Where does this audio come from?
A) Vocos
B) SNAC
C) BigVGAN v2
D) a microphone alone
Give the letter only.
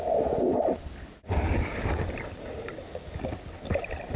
D